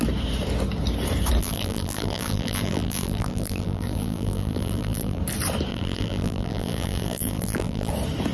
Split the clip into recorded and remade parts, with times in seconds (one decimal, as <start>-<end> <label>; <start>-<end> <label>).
0.0-1.4 recorded; 1.4-5.2 remade; 5.2-5.7 recorded; 5.7-7.9 remade; 7.9-8.3 recorded